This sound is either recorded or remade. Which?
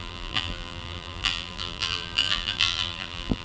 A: remade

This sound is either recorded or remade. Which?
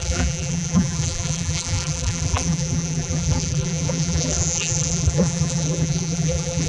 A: remade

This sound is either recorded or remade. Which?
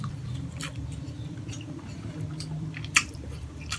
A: remade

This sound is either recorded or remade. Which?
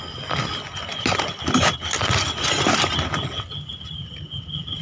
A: recorded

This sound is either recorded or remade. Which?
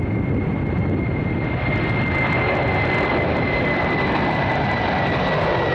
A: recorded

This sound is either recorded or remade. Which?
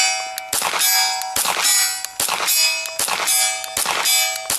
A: recorded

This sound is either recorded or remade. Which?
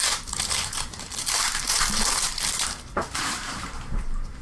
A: remade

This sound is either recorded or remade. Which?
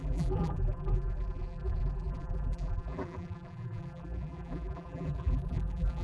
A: remade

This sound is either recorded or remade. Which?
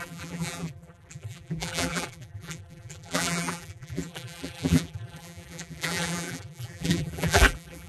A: remade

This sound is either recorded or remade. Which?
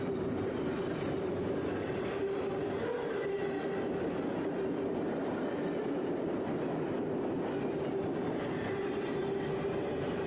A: remade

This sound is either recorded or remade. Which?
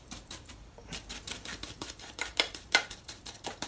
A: remade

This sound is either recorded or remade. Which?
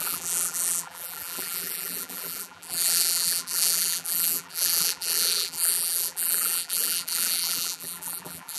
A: remade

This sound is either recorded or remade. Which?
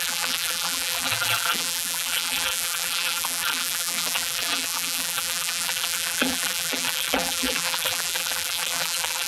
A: remade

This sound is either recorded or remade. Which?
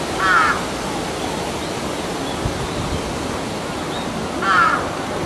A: recorded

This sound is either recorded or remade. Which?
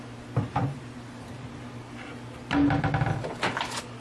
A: recorded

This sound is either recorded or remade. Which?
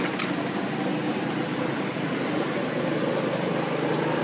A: recorded